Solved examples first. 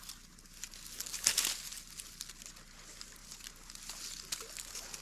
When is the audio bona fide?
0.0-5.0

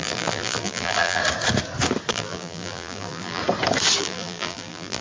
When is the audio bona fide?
1.2-2.1; 3.4-4.0

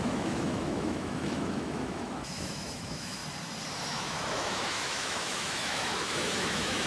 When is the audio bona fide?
3.2-3.9

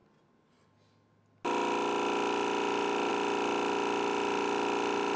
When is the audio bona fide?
0.0-5.2

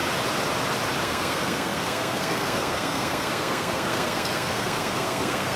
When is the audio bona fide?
0.0-1.0

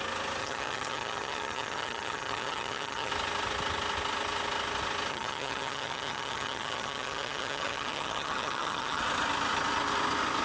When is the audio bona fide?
0.0-0.4; 3.1-5.1; 9.0-10.4

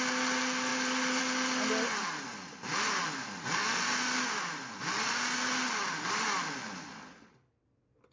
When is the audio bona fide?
0.0-8.1

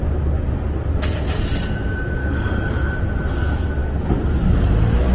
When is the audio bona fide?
0.0-2.2; 3.0-5.1